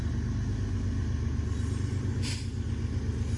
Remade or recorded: recorded